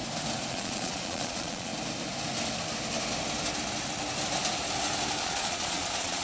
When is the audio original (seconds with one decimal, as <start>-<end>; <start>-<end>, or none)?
0.0-0.5; 1.7-5.2